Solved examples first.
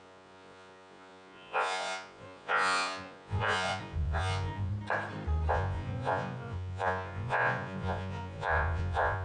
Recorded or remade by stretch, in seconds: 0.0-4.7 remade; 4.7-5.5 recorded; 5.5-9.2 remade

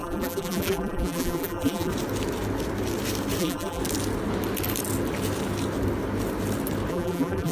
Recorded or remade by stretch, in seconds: 0.0-1.9 remade; 1.9-3.4 recorded; 3.4-3.8 remade; 3.8-6.9 recorded; 6.9-7.5 remade

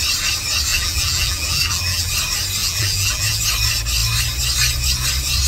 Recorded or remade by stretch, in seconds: 0.0-0.7 recorded; 0.7-2.1 remade; 2.1-2.6 recorded; 2.6-3.4 remade; 3.4-5.5 recorded

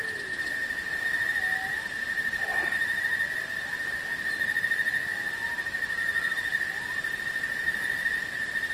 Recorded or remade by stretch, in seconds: 0.0-1.0 remade; 1.0-8.7 recorded